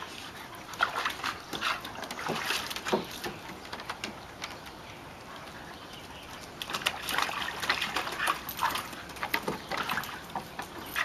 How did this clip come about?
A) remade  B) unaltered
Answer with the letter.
B